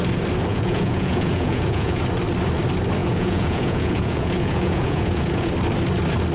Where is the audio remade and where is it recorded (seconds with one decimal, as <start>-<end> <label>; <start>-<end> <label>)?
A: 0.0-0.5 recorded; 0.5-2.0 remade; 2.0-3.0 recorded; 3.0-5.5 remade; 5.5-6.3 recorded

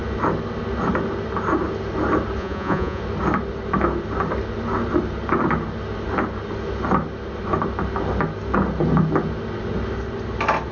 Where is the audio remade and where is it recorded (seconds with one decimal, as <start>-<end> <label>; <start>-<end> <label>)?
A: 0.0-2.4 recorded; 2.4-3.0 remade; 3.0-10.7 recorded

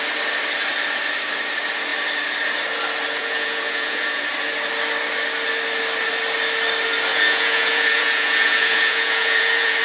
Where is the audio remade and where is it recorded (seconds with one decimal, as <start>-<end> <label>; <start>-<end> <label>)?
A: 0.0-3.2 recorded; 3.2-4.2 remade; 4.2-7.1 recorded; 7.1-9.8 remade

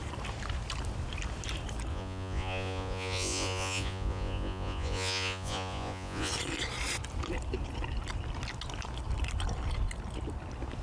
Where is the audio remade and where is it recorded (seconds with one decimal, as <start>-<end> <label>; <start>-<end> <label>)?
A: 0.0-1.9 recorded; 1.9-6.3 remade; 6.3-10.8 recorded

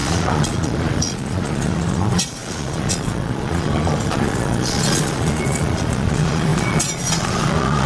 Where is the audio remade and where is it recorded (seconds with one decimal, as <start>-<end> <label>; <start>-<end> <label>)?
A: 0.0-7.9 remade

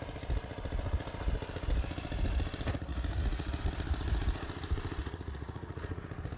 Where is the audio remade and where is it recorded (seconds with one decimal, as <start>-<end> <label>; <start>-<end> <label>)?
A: 0.0-2.9 recorded; 2.9-3.6 remade; 3.6-5.0 recorded; 5.0-6.0 remade; 6.0-6.4 recorded